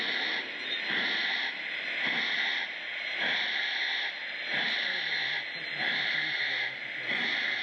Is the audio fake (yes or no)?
no